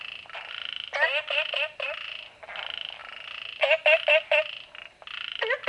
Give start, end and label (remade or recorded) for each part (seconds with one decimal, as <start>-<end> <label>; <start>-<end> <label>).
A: 0.0-5.7 recorded